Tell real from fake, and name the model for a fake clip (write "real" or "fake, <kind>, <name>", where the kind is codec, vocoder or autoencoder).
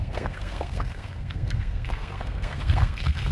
fake, codec, SNAC